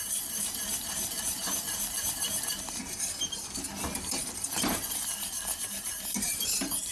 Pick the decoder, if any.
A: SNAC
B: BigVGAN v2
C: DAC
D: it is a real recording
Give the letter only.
B